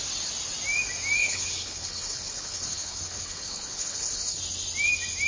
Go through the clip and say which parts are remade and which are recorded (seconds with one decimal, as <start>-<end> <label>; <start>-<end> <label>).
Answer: 0.0-1.2 recorded; 1.2-4.4 remade; 4.4-5.3 recorded